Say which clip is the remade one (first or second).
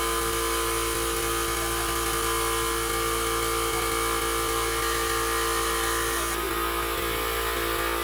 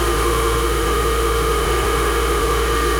second